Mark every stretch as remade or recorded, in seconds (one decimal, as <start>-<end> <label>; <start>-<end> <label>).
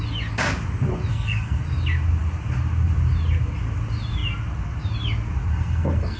0.0-1.1 recorded; 1.1-1.6 remade; 1.6-5.5 recorded; 5.5-6.2 remade